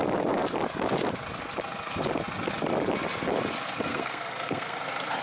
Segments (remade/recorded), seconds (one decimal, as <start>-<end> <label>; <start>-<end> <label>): 0.0-3.9 recorded; 3.9-4.8 remade; 4.8-5.2 recorded